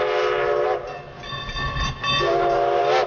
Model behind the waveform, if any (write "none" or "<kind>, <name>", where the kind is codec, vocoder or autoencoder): none